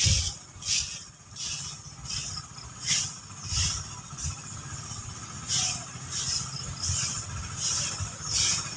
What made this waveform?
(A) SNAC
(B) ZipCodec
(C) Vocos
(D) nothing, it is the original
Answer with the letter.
D